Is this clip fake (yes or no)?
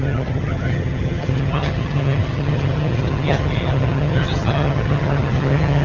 yes